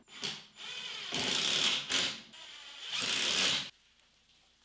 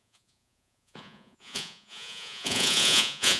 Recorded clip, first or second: first